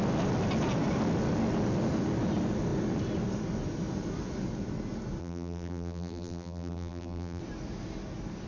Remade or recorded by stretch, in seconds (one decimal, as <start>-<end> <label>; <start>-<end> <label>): 0.0-5.2 recorded; 5.2-7.4 remade; 7.4-8.5 recorded